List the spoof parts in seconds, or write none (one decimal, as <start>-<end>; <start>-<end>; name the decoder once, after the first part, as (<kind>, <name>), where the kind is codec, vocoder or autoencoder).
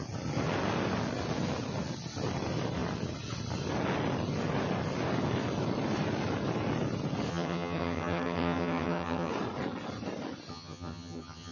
7.3-9.3 (vocoder, HiFi-GAN); 10.5-11.5